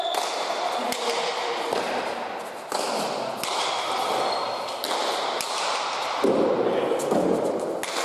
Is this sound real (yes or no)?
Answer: yes